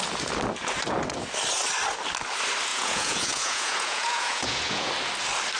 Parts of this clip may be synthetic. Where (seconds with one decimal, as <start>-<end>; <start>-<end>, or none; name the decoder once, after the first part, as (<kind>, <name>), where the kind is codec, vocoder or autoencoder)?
2.7-4.9 (vocoder, Vocos)